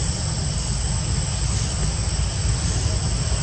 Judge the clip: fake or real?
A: real